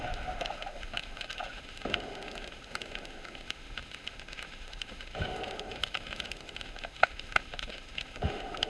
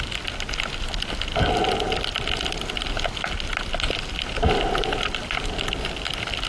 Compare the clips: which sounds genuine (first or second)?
second